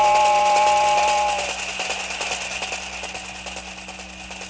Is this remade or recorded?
recorded